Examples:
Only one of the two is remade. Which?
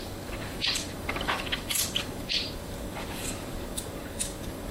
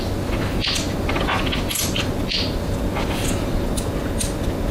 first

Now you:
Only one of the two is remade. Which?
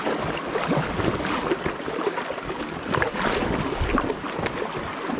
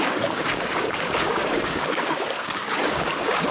second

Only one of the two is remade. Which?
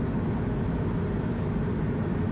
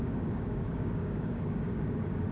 second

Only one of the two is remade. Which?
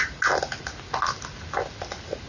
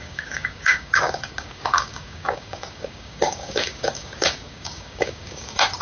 second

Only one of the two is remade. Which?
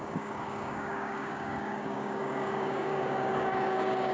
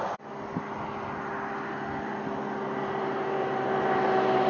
first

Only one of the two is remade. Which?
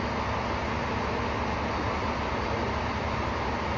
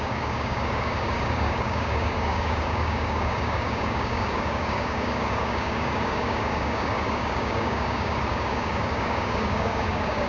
second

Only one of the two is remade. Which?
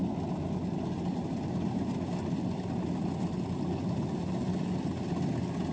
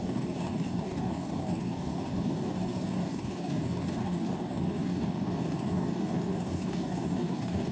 second